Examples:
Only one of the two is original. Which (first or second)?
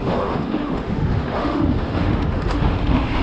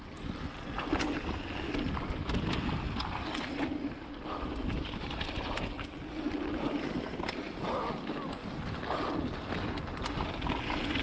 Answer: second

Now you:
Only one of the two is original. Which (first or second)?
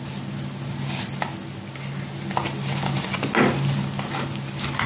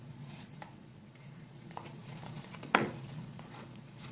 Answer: first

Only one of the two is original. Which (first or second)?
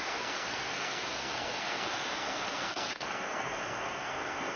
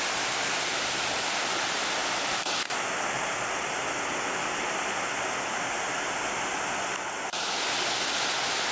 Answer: second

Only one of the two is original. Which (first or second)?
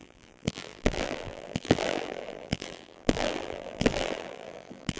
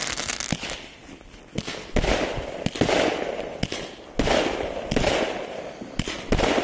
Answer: second